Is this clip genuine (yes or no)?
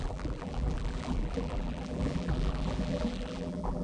no